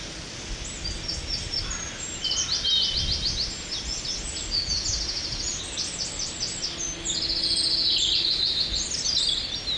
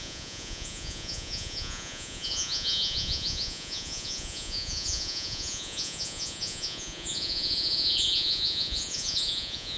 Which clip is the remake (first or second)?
second